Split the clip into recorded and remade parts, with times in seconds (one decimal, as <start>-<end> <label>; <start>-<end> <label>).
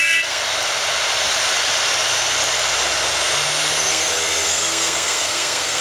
0.0-0.4 remade; 0.4-3.9 recorded; 3.9-5.8 remade